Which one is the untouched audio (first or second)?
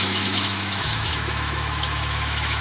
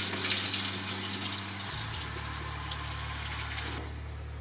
second